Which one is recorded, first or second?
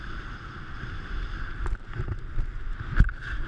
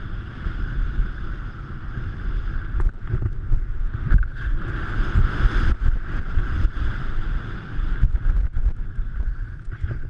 second